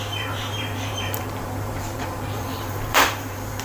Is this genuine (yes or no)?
no